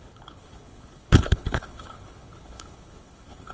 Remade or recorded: remade